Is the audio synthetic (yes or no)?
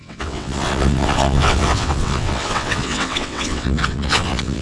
yes